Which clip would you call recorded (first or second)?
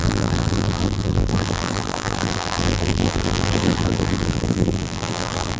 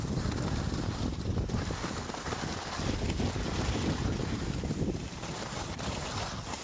second